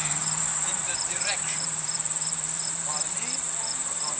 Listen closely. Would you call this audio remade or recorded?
remade